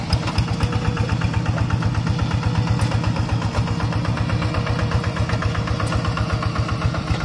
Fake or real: real